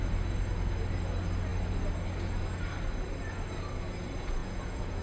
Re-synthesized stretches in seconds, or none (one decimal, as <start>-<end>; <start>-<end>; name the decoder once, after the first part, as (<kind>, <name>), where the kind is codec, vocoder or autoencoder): 4.4-5.0 (vocoder, Vocos)